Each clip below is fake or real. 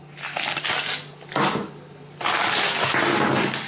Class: real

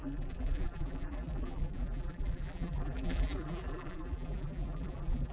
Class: fake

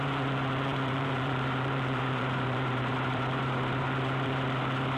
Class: fake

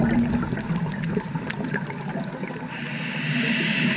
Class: real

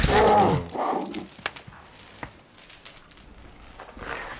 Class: real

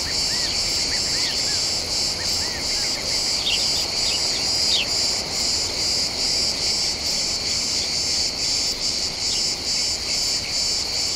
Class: real